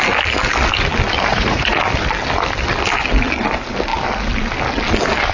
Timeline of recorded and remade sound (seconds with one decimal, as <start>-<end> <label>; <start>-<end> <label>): 0.0-1.3 recorded; 1.3-1.8 remade; 1.8-5.3 recorded